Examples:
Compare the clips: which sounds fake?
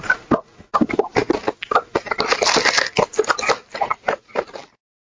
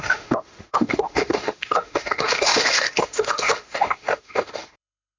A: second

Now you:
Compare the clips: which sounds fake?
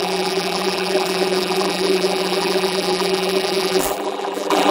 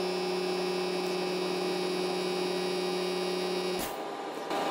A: first